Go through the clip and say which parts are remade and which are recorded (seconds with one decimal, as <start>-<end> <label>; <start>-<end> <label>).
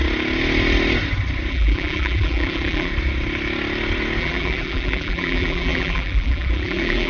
0.0-1.5 recorded; 1.5-2.9 remade; 2.9-4.2 recorded; 4.2-7.1 remade